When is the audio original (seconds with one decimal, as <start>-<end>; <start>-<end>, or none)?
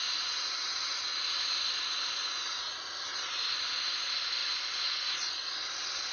0.0-6.1